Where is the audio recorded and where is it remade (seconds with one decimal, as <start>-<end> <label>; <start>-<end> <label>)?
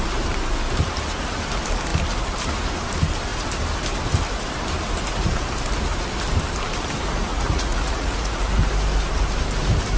0.0-7.3 recorded; 7.3-8.4 remade; 8.4-10.0 recorded